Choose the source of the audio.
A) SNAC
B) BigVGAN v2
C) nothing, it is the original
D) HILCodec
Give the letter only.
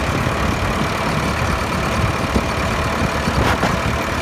C